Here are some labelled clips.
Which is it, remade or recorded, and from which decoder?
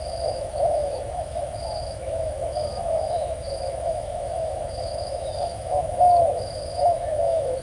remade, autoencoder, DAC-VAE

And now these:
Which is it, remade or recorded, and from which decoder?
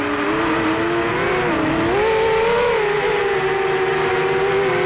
recorded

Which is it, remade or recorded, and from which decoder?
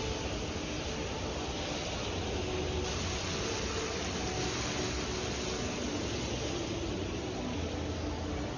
recorded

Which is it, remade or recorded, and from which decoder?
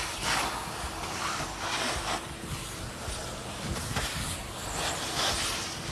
recorded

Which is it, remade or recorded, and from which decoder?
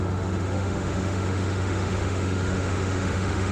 remade, autoencoder, DAC-VAE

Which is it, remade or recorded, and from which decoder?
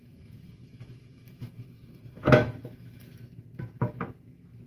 remade, autoencoder, DAC-VAE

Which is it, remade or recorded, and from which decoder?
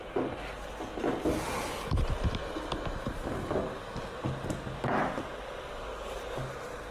recorded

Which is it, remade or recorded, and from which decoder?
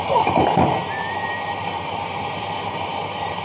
recorded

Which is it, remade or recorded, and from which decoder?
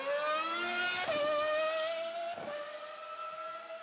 recorded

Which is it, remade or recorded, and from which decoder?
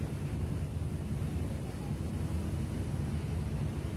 recorded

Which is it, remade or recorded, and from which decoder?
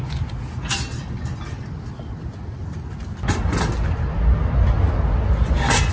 recorded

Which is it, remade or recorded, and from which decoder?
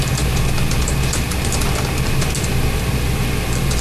recorded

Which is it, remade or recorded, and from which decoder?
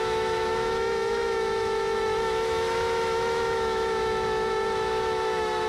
remade, autoencoder, DAC-VAE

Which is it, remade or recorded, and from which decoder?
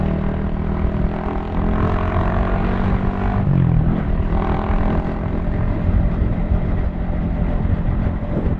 recorded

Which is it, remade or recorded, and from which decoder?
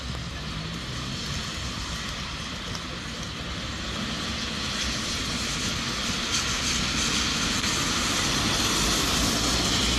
recorded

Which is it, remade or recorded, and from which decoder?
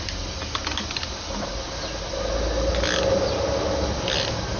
recorded